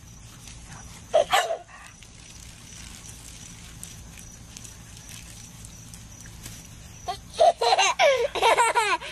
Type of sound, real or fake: real